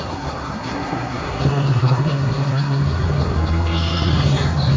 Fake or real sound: fake